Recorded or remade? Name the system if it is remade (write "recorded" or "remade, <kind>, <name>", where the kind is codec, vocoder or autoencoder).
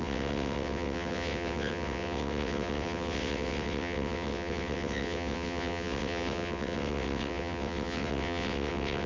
remade, vocoder, WaveNeXt